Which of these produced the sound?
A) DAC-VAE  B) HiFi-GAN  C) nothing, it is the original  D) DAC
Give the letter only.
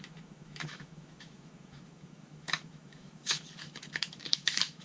A